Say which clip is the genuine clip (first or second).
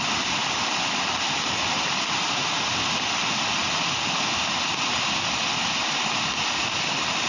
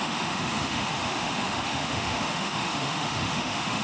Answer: first